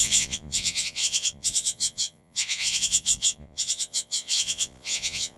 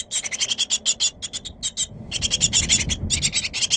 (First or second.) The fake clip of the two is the first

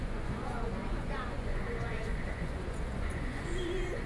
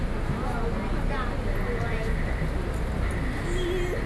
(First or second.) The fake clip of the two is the first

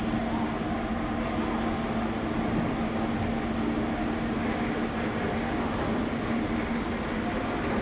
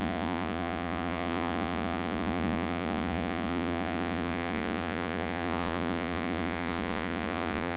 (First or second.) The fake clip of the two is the second